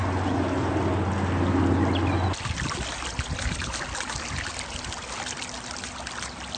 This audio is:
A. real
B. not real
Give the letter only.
A